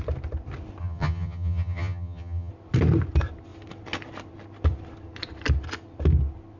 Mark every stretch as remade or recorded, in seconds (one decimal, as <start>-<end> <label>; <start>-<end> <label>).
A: 0.0-0.8 recorded; 0.8-2.5 remade; 2.5-6.6 recorded